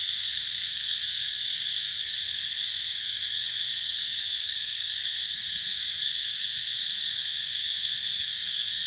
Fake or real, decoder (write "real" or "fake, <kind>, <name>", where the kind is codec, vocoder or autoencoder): fake, codec, SNAC